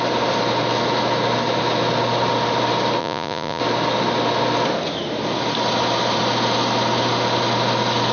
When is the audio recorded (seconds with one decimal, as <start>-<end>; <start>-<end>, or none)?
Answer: 0.0-3.0; 3.6-8.1